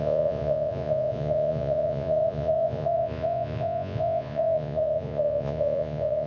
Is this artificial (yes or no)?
yes